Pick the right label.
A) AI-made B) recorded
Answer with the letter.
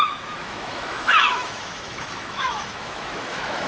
A